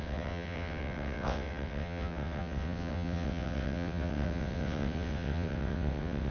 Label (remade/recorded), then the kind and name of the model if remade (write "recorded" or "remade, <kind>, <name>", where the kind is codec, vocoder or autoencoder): remade, vocoder, WaveNeXt